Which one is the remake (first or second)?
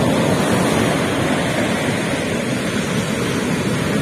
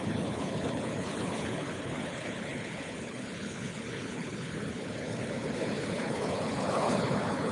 second